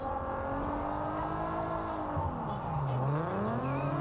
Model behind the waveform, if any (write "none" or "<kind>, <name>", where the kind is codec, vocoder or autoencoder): none